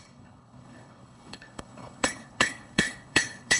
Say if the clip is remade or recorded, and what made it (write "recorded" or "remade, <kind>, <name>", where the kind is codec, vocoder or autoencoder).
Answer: remade, codec, HILCodec